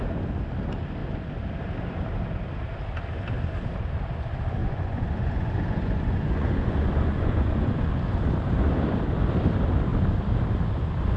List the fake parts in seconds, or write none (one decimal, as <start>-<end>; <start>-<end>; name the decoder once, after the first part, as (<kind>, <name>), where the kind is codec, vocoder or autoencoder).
4.6-7.9 (vocoder, Vocos)